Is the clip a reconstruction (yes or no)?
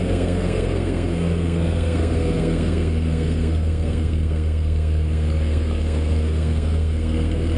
yes